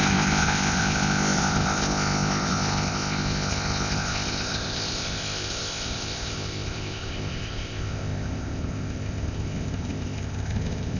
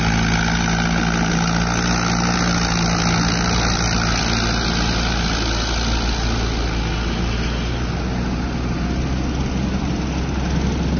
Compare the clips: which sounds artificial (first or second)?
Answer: first